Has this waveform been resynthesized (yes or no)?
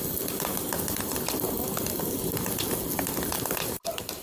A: no